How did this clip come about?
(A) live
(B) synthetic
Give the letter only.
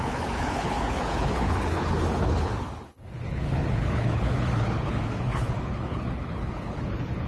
B